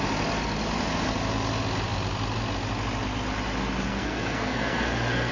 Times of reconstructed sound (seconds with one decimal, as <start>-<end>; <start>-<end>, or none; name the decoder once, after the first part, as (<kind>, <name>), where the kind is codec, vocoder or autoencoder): 3.9-5.3 (codec, SNAC)